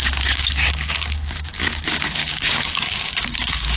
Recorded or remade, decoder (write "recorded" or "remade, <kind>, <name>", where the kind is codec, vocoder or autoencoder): remade, codec, DAC